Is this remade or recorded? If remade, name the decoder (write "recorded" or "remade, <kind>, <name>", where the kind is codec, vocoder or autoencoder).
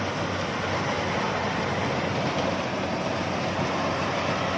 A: recorded